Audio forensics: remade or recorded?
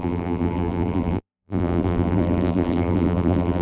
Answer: remade